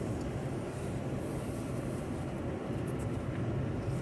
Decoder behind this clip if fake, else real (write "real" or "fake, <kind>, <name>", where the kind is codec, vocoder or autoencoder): real